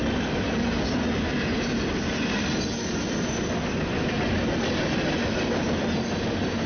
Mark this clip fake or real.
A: real